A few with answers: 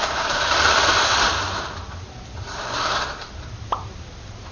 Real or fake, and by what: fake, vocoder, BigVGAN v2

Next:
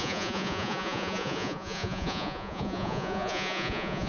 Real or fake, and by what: fake, vocoder, Vocos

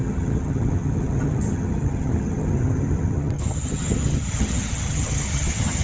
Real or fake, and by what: fake, vocoder, HiFi-GAN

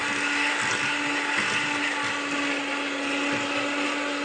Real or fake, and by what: real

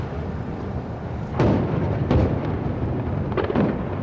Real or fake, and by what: real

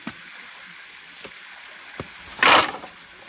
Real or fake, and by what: real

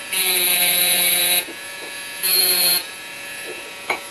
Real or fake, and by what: fake, vocoder, Vocos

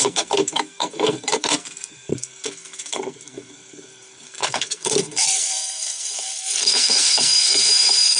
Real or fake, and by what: fake, codec, SNAC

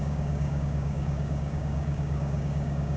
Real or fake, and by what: fake, codec, DAC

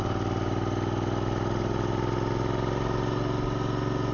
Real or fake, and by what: real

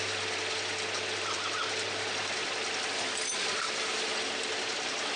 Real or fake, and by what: real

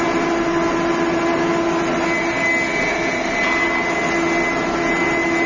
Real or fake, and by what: real